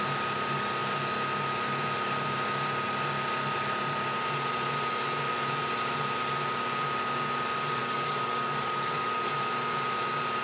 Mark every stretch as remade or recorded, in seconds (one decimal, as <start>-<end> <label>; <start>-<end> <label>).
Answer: 0.0-7.8 recorded; 7.8-9.3 remade; 9.3-10.4 recorded